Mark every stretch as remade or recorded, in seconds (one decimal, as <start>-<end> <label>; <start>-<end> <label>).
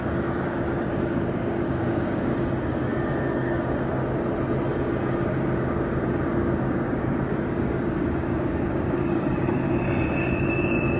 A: 0.0-4.0 remade; 4.0-4.7 recorded; 4.7-11.0 remade